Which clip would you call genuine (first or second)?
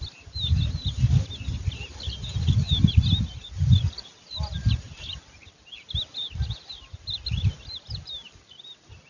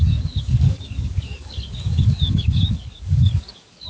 first